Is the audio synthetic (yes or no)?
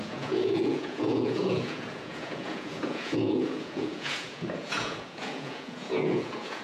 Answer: yes